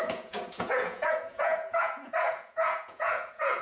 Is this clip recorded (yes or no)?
no